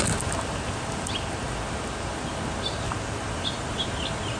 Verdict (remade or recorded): recorded